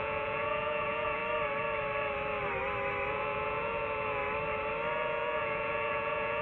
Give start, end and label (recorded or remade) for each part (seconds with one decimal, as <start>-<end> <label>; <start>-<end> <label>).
0.0-1.2 remade; 1.2-3.1 recorded; 3.1-4.2 remade; 4.2-4.9 recorded; 4.9-6.4 remade